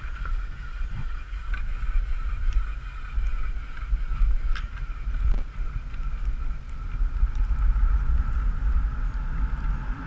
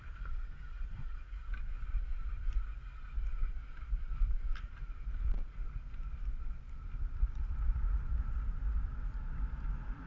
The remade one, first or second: second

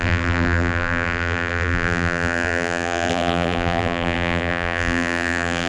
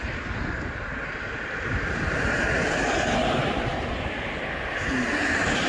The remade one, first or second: first